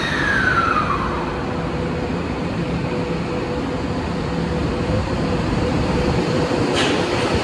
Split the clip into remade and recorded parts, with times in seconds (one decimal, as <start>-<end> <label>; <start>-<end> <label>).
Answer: 0.0-2.1 recorded; 2.1-2.6 remade; 2.6-4.6 recorded; 4.6-6.9 remade; 6.9-7.4 recorded